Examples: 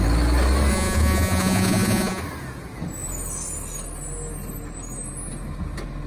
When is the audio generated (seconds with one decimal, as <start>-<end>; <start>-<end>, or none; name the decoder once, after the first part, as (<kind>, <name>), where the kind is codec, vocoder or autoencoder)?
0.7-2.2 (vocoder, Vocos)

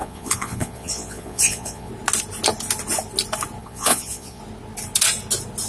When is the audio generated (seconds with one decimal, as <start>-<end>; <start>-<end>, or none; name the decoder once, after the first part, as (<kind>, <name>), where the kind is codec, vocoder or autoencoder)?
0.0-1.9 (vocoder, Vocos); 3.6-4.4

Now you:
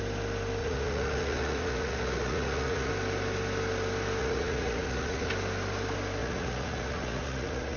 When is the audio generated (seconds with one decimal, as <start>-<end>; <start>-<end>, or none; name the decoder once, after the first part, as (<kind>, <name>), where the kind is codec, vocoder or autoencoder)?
0.6-2.9 (vocoder, Vocos); 4.2-5.3; 6.2-7.8

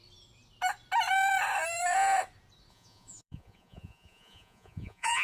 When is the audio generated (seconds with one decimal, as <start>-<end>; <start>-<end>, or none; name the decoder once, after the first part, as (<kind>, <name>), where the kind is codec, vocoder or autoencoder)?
2.7-5.2 (vocoder, Vocos)

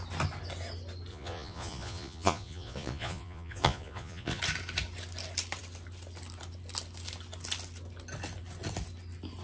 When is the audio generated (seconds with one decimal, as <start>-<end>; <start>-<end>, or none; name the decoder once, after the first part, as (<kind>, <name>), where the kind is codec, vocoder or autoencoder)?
1.1-4.4 (vocoder, Vocos)

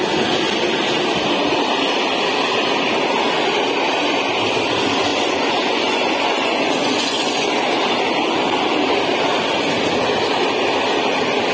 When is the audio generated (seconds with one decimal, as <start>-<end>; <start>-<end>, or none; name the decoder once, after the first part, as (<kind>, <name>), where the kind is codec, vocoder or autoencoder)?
5.1-7.5 (vocoder, Vocos)

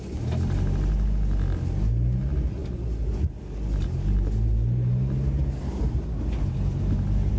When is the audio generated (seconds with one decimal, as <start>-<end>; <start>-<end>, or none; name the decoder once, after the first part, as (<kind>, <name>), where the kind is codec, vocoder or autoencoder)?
none

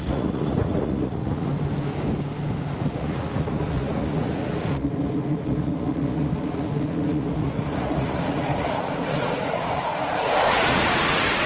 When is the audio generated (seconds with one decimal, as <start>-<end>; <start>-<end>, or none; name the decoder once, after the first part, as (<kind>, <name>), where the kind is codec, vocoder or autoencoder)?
0.0-1.5 (vocoder, Vocos); 2.6-11.5